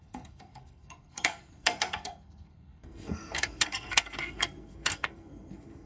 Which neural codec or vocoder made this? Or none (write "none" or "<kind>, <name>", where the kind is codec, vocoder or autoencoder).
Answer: codec, SNAC